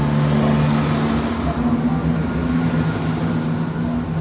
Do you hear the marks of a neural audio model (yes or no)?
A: no